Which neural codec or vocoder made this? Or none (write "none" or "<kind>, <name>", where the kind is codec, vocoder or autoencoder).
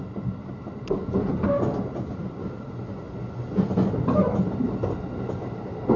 none